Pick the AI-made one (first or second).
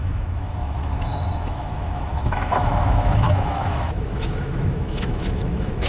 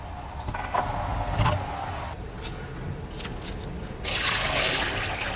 first